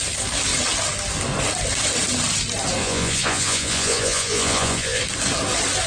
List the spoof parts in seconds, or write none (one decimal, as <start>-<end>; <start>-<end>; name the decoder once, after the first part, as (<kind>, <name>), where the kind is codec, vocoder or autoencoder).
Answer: 2.8-5.0 (vocoder, Vocos)